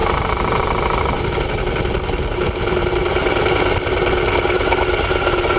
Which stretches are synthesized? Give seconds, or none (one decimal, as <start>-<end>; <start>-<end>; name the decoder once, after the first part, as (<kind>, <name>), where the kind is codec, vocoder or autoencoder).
none